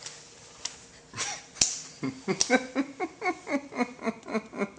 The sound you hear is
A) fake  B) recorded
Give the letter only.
B